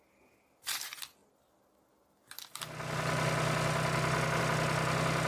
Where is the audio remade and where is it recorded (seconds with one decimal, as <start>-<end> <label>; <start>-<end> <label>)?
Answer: 0.0-5.3 recorded